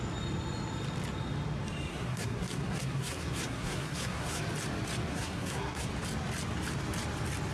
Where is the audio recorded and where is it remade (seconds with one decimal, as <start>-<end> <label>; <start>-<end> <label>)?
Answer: 0.0-1.9 recorded; 1.9-4.4 remade; 4.4-5.1 recorded; 5.1-5.9 remade; 5.9-7.5 recorded